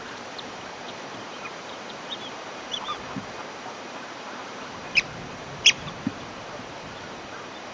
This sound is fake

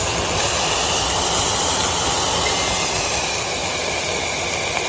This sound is real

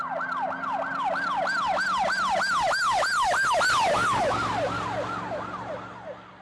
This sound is real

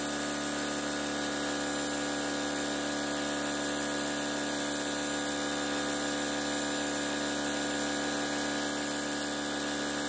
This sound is real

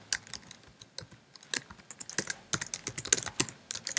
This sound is real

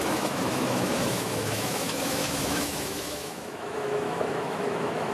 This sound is fake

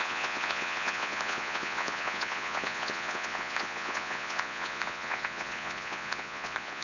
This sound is fake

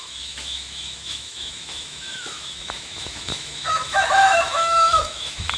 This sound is fake